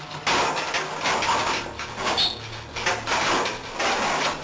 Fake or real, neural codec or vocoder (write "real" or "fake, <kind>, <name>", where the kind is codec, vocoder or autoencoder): real